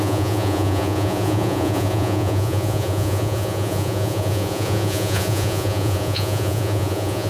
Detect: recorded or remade remade